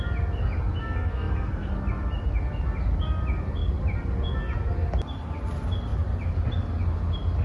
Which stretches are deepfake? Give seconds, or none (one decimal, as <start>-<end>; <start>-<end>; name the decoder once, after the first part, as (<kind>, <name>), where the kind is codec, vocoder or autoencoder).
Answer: 0.8-1.7 (codec, SNAC)